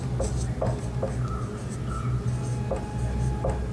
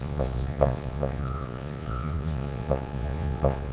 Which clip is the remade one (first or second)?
second